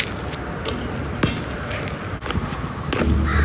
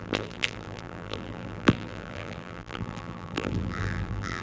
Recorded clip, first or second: first